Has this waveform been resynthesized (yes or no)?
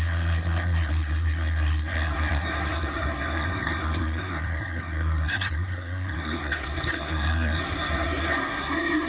yes